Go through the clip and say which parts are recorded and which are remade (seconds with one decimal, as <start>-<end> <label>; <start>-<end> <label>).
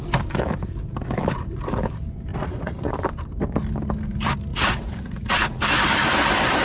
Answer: 0.0-2.3 recorded; 2.3-2.9 remade; 2.9-4.5 recorded; 4.5-5.6 remade; 5.6-6.6 recorded